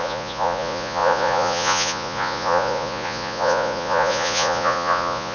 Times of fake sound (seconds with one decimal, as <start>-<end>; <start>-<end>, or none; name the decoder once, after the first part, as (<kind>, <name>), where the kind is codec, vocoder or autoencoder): 0.0-5.3 (vocoder, Vocos)